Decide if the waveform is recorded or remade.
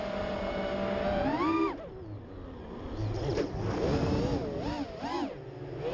recorded